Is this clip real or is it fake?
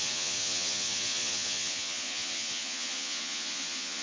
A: fake